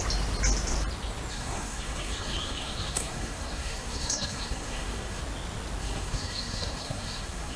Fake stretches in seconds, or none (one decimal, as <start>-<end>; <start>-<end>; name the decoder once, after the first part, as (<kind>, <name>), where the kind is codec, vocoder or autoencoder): 1.3-5.2 (codec, SNAC); 5.8-7.6

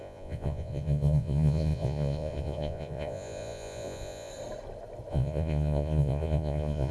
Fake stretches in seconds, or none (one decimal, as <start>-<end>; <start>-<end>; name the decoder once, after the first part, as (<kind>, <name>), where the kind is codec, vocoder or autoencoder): 0.0-4.3 (vocoder, Vocos); 5.1-6.9

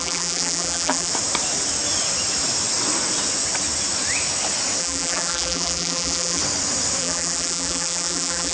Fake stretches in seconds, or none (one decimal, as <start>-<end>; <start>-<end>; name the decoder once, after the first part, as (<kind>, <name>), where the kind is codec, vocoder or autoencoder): 0.0-1.1 (vocoder, BigVGAN v2); 4.8-6.4; 7.0-8.5

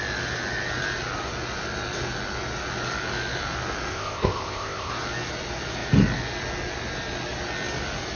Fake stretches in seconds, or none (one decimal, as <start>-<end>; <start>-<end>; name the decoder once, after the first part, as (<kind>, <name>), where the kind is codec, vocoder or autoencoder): 3.9-4.9 (codec, ZipCodec)

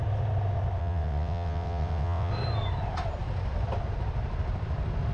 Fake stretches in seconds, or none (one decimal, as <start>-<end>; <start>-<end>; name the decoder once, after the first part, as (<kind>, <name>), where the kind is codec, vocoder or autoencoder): 0.8-2.3 (vocoder, WaveNeXt)

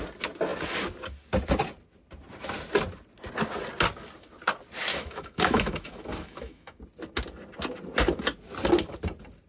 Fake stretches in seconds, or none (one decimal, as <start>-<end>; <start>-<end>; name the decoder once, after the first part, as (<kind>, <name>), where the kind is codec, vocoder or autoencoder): 4.9-6.8 (autoencoder, DAC-VAE)

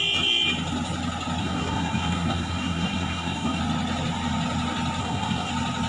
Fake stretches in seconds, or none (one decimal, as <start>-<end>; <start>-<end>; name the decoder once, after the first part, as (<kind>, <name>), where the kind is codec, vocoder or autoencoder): 1.4-3.6 (codec, SNAC); 5.0-5.5